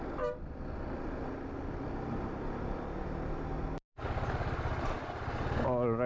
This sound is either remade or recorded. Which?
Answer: recorded